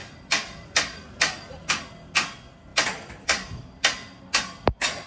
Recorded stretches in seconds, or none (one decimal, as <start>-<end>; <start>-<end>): 1.6-2.7; 4.2-5.1